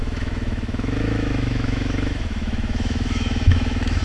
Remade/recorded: remade